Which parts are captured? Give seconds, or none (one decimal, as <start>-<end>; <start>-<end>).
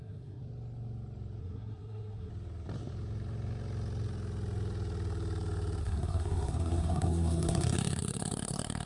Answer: 0.4-1.4; 2.3-5.8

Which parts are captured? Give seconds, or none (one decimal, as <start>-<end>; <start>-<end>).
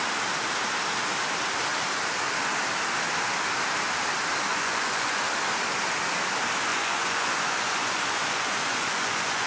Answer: 0.0-4.5; 5.2-6.7